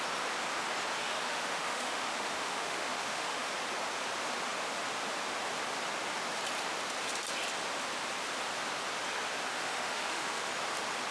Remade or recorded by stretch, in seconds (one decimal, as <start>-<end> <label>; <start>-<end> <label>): 0.0-1.0 recorded; 1.0-3.5 remade; 3.5-9.5 recorded; 9.5-10.5 remade; 10.5-11.1 recorded